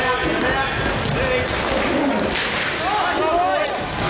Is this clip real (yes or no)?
yes